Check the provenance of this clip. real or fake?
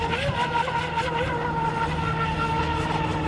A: real